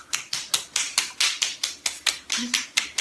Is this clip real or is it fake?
real